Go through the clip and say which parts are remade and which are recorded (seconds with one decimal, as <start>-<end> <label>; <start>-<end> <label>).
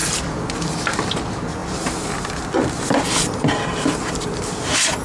0.0-5.0 recorded